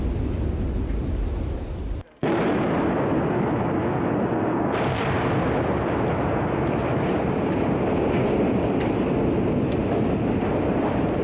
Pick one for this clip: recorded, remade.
recorded